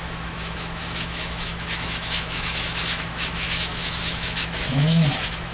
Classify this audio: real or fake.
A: fake